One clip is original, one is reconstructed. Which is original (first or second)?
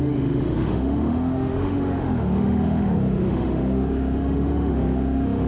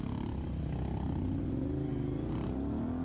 second